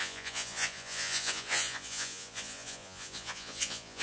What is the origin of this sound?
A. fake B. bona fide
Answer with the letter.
A